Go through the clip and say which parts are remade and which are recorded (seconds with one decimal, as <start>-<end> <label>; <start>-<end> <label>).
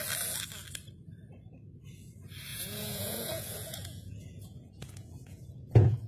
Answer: 0.0-2.5 recorded; 2.5-6.1 remade